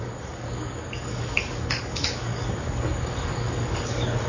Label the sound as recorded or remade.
remade